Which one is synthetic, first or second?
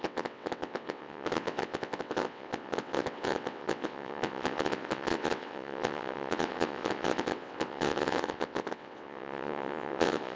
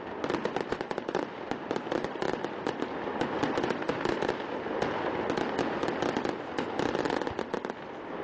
first